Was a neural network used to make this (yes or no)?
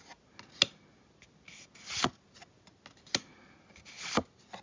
no